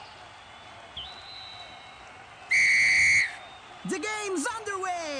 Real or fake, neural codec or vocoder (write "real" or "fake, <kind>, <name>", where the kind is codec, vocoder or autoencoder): real